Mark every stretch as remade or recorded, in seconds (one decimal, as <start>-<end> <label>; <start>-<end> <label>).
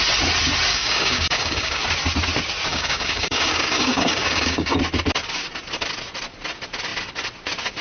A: 0.0-0.7 recorded; 0.7-1.8 remade; 1.8-2.7 recorded; 2.7-4.8 remade; 4.8-7.8 recorded